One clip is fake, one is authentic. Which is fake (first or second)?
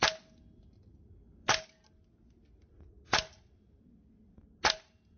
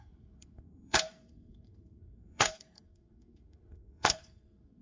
second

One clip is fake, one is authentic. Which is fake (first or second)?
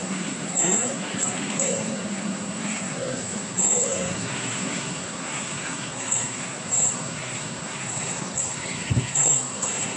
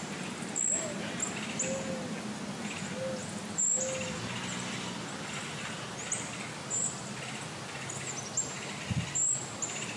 first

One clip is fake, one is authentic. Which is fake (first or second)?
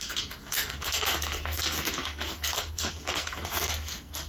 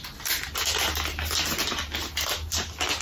first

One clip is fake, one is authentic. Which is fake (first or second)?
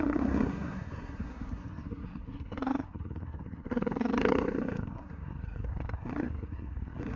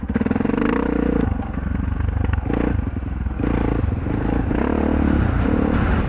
first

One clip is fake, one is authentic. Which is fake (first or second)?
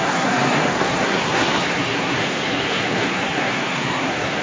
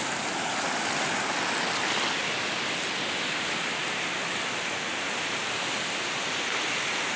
first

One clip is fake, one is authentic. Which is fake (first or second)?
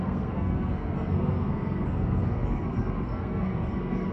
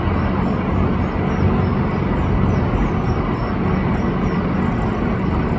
first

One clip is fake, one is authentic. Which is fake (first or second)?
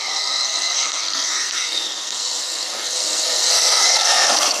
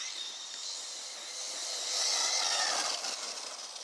first